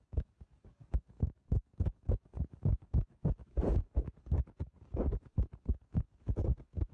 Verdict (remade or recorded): remade